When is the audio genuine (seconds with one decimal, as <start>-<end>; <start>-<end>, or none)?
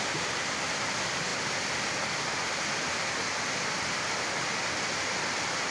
0.0-5.7